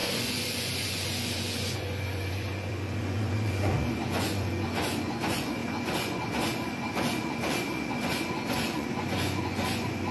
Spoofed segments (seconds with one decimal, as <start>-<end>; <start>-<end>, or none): 0.0-10.1